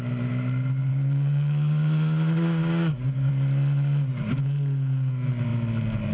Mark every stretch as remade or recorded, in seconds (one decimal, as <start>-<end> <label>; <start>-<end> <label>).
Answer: 0.0-0.9 recorded; 0.9-3.3 remade; 3.3-6.1 recorded